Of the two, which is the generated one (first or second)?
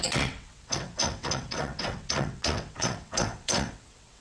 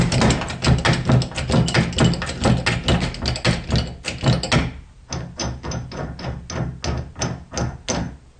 first